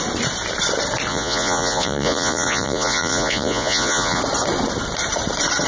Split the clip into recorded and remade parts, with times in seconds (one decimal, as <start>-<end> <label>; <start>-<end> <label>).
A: 0.0-1.1 recorded; 1.1-4.2 remade; 4.2-5.7 recorded